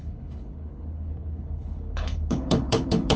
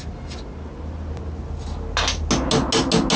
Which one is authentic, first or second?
second